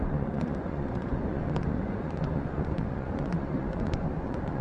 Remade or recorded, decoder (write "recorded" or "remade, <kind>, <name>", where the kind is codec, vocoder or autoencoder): remade, vocoder, Vocos